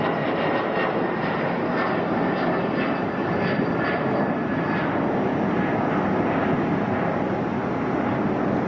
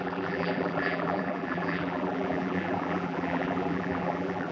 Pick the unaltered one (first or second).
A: first